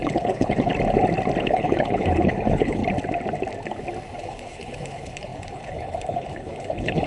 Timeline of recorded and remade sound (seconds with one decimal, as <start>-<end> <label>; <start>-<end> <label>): 0.0-0.7 remade; 0.7-1.4 recorded; 1.4-2.8 remade; 2.8-4.2 recorded; 4.2-7.1 remade